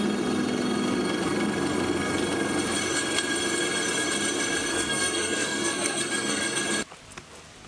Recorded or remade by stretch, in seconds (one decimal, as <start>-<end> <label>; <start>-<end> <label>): 0.0-4.7 recorded; 4.7-6.6 remade; 6.6-7.7 recorded